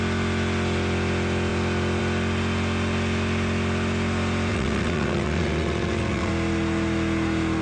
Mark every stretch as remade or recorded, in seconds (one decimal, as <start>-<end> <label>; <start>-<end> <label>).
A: 0.0-4.5 recorded; 4.5-6.3 remade; 6.3-7.6 recorded